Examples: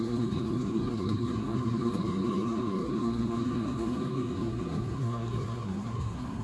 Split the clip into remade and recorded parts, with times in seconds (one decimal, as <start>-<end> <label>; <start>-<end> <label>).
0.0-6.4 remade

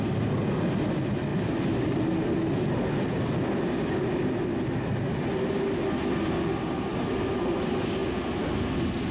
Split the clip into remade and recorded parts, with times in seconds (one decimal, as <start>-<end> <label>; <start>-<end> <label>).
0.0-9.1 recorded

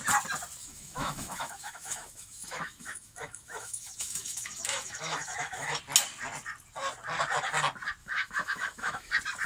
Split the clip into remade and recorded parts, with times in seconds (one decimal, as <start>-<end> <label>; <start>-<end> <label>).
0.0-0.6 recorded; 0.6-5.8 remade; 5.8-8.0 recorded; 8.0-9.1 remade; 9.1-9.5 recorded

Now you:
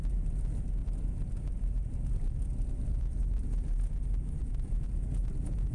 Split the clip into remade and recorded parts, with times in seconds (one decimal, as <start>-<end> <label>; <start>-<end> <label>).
0.0-0.8 recorded; 0.8-3.5 remade; 3.5-5.7 recorded

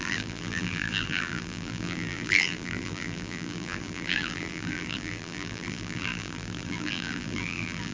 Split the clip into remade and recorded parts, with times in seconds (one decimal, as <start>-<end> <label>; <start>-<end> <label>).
0.0-7.9 remade

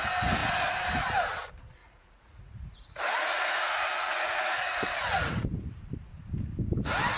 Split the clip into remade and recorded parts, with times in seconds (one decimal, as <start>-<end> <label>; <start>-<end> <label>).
0.0-1.8 recorded; 1.8-5.3 remade; 5.3-7.2 recorded